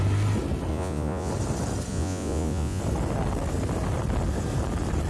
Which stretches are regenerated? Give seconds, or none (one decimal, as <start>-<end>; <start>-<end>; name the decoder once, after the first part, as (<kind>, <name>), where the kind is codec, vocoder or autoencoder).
0.7-1.3 (vocoder, Vocos); 1.9-2.8